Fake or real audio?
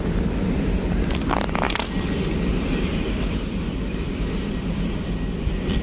fake